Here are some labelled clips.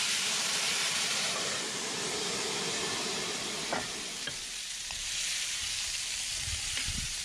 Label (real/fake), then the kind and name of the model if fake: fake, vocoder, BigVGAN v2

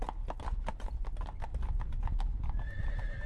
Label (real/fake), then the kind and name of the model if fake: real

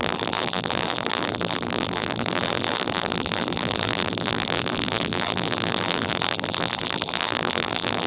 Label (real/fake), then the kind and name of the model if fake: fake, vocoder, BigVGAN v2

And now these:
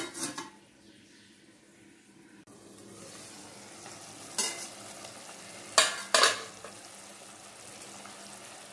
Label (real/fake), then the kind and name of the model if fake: real